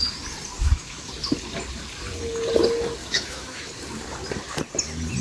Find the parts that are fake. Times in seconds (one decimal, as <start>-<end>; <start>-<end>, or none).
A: 0.6-1.1; 3.0-3.7